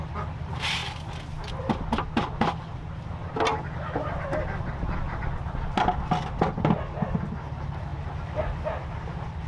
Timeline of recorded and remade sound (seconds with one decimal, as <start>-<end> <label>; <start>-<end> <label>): 0.0-9.5 recorded